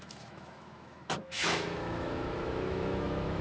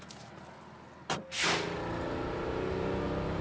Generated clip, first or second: first